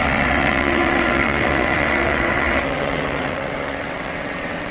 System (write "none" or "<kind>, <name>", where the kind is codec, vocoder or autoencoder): vocoder, WaveNeXt